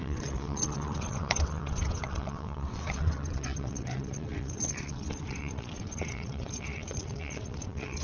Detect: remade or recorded remade